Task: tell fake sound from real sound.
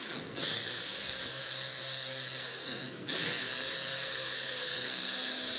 fake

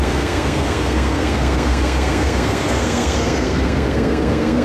fake